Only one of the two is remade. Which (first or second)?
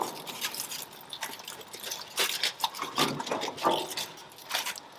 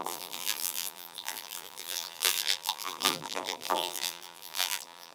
second